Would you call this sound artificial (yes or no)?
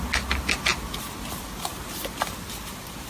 no